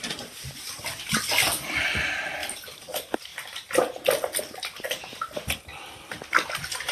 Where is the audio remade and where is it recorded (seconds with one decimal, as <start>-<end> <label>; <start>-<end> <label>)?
0.0-3.3 remade; 3.3-4.4 recorded; 4.4-6.9 remade